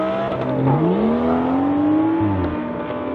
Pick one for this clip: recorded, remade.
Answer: recorded